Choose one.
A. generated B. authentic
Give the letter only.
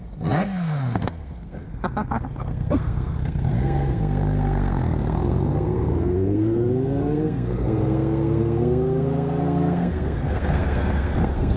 A